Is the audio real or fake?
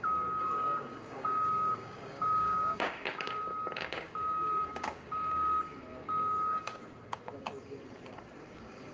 fake